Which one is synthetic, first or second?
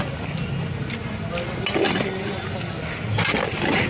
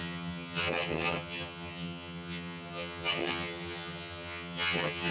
second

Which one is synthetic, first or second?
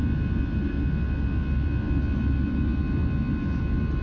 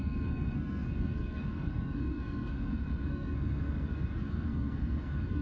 second